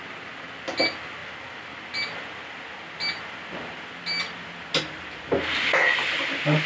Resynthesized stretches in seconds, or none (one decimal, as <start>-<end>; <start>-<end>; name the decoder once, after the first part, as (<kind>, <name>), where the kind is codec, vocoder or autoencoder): none